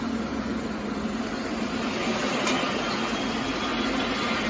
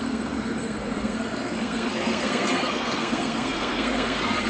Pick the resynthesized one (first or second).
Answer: second